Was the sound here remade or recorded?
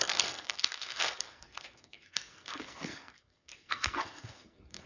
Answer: remade